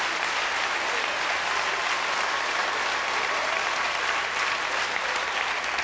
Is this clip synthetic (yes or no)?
no